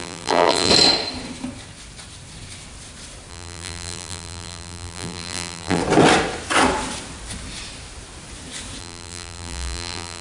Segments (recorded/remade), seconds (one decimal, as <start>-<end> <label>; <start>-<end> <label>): 0.0-0.7 remade; 0.7-3.3 recorded; 3.3-5.8 remade; 5.8-8.8 recorded; 8.8-10.2 remade